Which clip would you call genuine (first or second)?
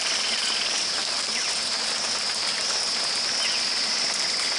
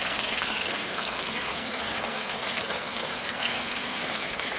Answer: first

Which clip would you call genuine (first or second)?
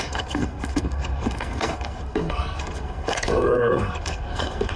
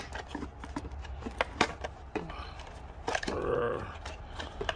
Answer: second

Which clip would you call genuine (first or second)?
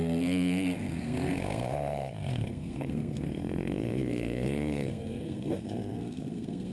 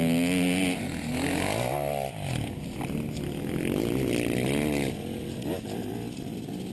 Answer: second